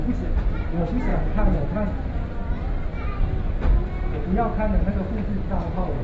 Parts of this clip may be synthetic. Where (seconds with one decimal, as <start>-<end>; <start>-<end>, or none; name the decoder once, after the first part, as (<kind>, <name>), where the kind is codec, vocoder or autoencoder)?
none